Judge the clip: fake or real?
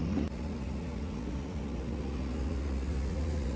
fake